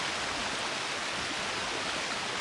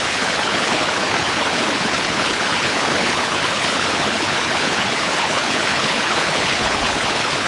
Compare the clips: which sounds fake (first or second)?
second